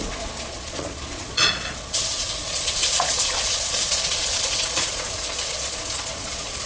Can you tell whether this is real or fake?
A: fake